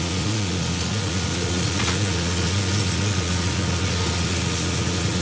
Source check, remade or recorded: remade